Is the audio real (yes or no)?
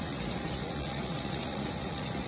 no